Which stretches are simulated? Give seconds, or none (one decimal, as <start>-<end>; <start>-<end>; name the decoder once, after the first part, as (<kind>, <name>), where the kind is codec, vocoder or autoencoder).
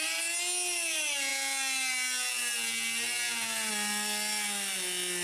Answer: none